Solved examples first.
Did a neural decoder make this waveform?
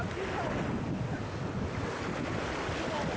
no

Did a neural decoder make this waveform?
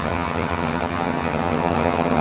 yes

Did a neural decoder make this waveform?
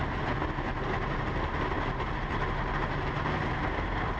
no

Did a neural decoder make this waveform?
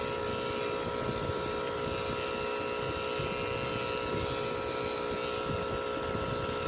no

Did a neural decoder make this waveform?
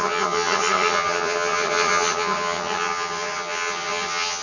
yes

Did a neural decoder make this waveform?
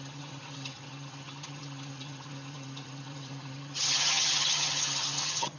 yes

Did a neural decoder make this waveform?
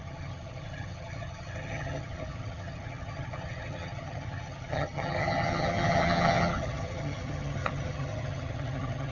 yes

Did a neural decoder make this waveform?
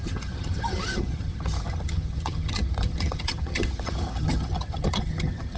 yes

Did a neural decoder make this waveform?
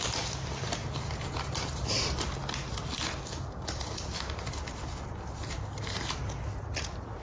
no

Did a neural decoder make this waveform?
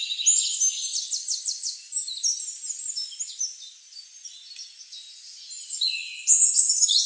no